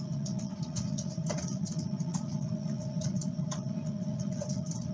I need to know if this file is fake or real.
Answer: fake